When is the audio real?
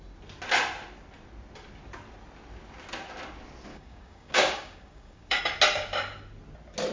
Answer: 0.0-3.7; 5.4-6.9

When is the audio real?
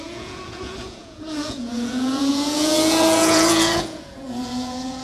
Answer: none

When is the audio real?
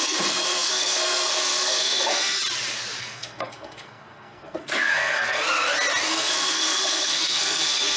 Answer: 2.4-3.0; 5.4-6.1